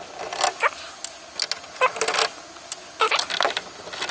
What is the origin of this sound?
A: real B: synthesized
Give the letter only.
A